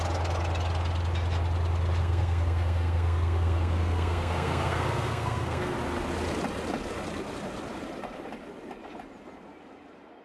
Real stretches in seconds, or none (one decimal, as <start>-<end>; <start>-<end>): 0.0-2.0; 5.7-10.2